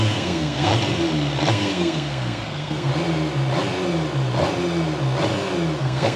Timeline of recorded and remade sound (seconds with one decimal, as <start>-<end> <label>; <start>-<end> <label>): 0.0-0.7 remade; 0.7-1.5 recorded; 1.5-2.9 remade; 2.9-5.8 recorded; 5.8-6.2 remade